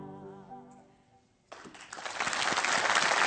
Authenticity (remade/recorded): recorded